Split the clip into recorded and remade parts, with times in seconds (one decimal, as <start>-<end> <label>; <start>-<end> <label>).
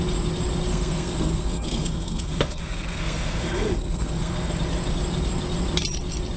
0.0-0.7 recorded; 0.7-4.5 remade; 4.5-6.4 recorded